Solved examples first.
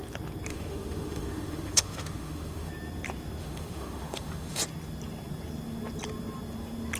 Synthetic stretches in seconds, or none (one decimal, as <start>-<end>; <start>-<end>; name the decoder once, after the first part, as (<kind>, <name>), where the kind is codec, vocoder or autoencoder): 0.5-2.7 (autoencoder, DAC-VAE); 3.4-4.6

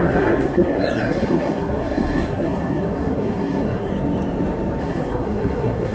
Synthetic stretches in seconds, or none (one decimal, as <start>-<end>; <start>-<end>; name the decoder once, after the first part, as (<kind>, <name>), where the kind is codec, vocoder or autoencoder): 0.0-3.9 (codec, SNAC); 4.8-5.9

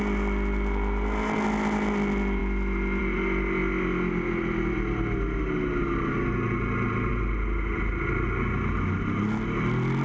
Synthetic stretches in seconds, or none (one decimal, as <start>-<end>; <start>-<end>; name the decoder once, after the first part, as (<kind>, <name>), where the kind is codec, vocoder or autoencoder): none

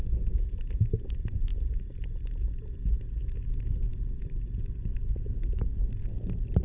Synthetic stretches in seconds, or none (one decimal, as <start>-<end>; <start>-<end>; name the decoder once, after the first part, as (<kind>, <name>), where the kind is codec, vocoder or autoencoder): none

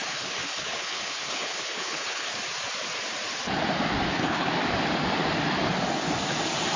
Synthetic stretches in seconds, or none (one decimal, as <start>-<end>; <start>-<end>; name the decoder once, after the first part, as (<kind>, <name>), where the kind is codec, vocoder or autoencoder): 0.0-2.3 (codec, HILCodec); 4.1-4.5